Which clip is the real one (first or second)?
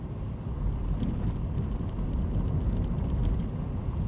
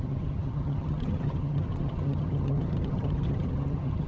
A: first